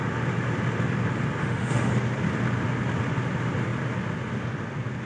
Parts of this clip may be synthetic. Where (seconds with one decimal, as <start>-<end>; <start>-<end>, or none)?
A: 1.4-1.9